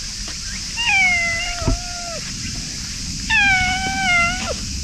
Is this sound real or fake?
real